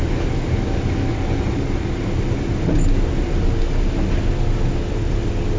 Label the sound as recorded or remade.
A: recorded